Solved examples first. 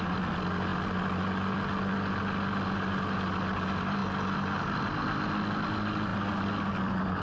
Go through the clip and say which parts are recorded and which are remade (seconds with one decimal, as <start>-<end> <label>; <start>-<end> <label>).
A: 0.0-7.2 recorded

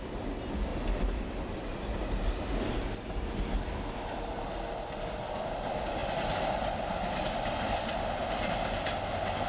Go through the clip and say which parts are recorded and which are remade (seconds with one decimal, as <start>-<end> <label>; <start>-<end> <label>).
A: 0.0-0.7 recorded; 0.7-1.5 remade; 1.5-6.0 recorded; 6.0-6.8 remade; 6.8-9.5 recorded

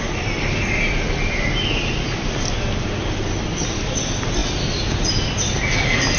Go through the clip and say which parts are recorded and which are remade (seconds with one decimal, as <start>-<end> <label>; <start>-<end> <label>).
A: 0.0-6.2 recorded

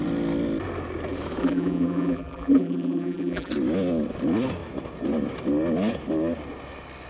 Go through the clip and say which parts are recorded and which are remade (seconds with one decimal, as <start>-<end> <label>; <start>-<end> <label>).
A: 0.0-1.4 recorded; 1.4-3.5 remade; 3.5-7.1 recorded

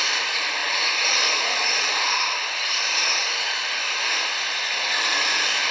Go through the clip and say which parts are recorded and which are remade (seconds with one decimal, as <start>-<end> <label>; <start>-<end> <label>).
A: 0.0-0.6 recorded; 0.6-4.0 remade; 4.0-5.7 recorded

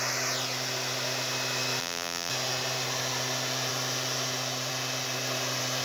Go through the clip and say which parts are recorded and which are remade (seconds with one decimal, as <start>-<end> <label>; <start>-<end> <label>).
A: 0.0-1.8 recorded; 1.8-2.3 remade; 2.3-5.8 recorded